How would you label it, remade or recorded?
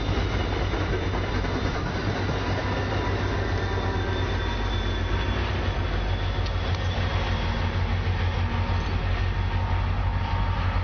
recorded